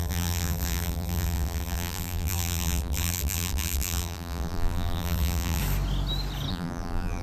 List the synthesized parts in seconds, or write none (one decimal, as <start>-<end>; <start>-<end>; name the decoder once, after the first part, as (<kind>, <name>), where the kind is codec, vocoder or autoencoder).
0.0-5.6 (vocoder, BigVGAN v2); 6.5-7.2